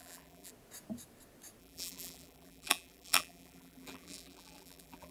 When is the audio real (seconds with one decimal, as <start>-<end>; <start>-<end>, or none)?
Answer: 0.5-1.6